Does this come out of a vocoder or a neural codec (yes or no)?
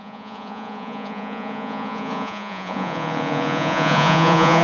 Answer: yes